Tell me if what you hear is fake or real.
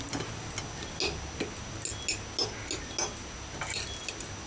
real